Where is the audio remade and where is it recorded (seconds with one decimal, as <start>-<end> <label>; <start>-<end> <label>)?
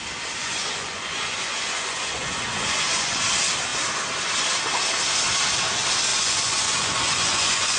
0.0-0.4 recorded; 0.4-3.2 remade; 3.2-6.1 recorded; 6.1-7.8 remade